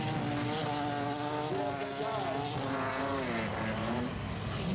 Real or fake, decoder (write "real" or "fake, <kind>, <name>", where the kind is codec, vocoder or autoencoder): real